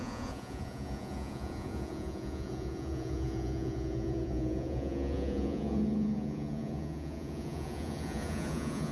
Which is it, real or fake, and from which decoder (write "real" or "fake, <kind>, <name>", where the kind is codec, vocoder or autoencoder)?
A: fake, vocoder, Vocos